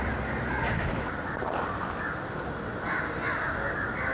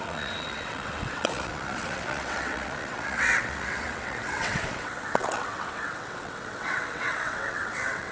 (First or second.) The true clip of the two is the first